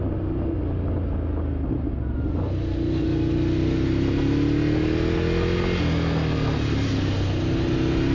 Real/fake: real